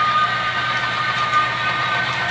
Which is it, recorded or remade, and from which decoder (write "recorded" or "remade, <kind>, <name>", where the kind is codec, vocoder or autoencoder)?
recorded